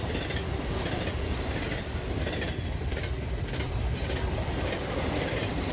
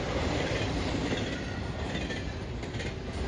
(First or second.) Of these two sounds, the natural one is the second